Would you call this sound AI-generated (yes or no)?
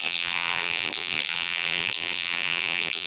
yes